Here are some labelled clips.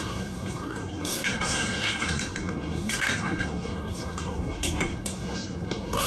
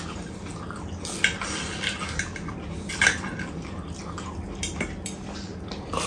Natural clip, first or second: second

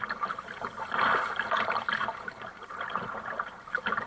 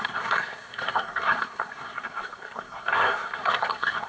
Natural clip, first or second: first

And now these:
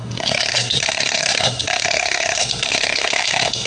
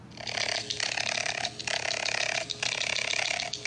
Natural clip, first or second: second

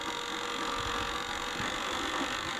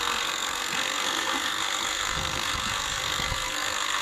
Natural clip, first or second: first